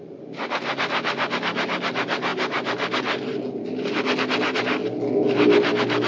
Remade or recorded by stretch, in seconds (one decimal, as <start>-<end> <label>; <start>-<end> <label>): 0.0-6.1 recorded